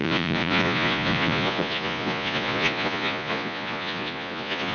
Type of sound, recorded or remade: remade